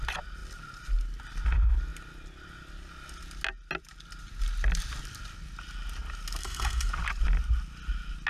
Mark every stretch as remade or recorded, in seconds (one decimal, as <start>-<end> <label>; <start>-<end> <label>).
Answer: 0.0-6.4 recorded; 6.4-6.9 remade; 6.9-8.3 recorded